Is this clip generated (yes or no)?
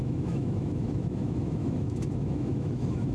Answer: yes